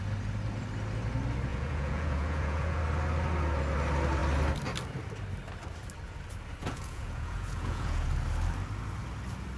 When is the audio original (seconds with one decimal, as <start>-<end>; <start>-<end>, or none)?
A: 0.0-1.5; 2.8-6.6; 8.1-9.6